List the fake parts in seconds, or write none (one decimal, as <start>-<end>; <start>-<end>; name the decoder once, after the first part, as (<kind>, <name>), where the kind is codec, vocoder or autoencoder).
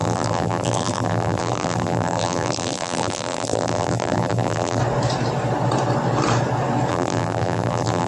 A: 0.0-4.8 (vocoder, BigVGAN v2); 6.9-8.1